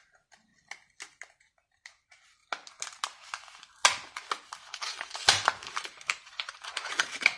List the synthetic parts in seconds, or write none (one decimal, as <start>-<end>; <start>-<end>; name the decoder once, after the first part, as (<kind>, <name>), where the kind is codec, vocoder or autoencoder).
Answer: 0.0-0.5 (vocoder, BigVGAN v2); 1.4-2.4; 4.7-7.4